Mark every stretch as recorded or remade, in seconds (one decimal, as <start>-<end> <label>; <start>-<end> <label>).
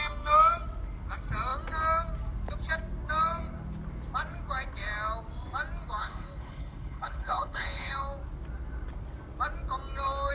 0.0-6.0 recorded; 6.0-7.9 remade; 7.9-10.3 recorded